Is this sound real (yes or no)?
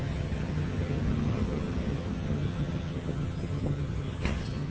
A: no